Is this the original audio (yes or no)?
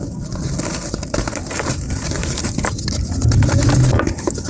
yes